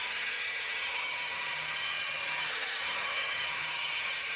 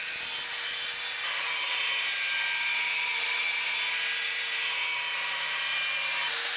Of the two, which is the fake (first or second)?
first